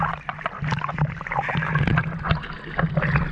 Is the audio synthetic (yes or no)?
no